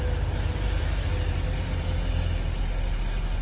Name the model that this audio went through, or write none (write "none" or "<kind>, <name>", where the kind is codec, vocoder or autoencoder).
none